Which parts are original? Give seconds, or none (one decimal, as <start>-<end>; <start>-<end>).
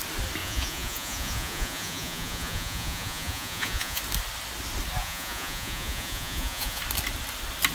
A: 0.0-0.4; 4.0-5.0; 6.8-7.7